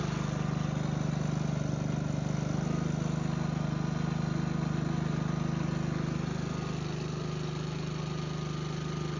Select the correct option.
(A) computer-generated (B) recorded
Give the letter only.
B